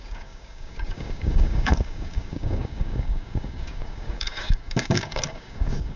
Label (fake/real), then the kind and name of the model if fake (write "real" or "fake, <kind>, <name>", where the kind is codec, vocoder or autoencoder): fake, codec, DAC